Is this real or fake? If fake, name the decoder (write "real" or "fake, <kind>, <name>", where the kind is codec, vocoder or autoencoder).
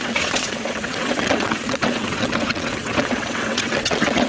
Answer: fake, vocoder, WaveNeXt